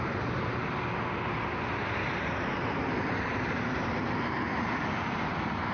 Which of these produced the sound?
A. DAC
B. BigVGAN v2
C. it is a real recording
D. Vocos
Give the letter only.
C